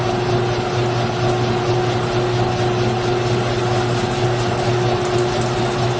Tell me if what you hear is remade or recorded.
recorded